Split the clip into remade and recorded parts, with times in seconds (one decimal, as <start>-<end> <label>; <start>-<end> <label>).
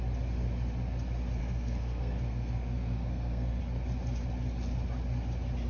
0.0-1.4 recorded; 1.4-3.6 remade; 3.6-5.7 recorded